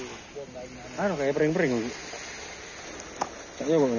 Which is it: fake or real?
real